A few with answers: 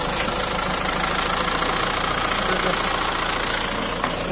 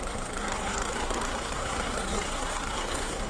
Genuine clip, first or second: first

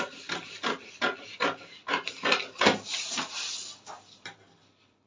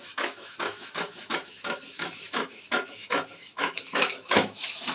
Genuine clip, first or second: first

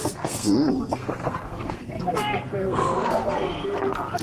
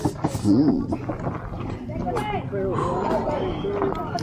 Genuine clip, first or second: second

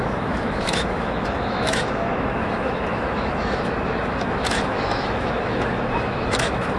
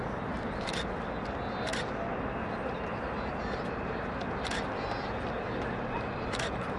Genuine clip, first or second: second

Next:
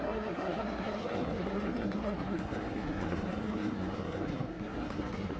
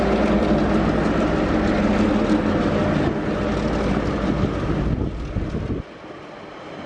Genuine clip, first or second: second